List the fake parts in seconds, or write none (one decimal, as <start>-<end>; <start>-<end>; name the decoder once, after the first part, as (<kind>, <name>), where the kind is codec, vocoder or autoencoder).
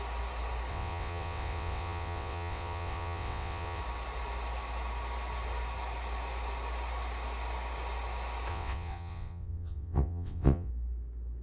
0.7-3.8 (vocoder, WaveNeXt); 8.5-10.7